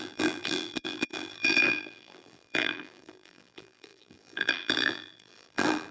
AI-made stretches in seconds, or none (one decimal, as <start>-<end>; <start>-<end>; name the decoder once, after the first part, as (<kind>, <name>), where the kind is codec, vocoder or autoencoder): 0.0-5.9 (vocoder, BigVGAN v2)